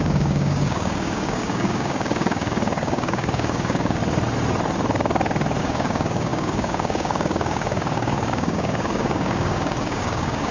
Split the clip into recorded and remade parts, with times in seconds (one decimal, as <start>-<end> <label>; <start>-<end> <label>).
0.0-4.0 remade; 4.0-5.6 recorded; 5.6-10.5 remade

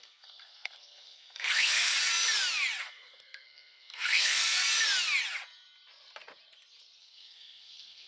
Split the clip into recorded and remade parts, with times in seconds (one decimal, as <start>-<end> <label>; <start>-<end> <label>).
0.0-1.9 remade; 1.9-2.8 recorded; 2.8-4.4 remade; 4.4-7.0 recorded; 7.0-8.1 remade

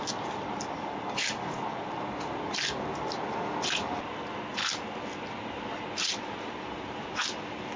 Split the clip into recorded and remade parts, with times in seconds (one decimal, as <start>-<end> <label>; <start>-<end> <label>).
0.0-7.8 recorded